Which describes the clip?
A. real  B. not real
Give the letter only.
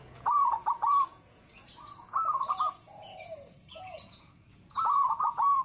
B